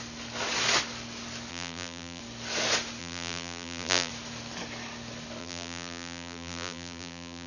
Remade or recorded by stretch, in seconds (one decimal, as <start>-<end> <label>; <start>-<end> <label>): 0.0-1.5 recorded; 1.5-2.2 remade; 2.2-3.0 recorded; 3.0-4.1 remade; 4.1-5.4 recorded; 5.4-7.5 remade